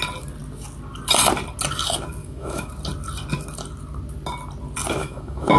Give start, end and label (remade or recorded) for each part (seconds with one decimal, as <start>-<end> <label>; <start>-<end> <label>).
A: 0.0-2.2 recorded; 2.2-2.7 remade; 2.7-5.0 recorded; 5.0-5.6 remade